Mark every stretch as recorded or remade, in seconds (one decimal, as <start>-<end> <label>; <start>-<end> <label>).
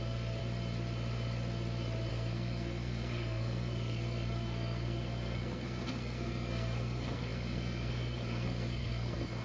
0.0-0.4 remade; 0.4-2.1 recorded; 2.1-9.4 remade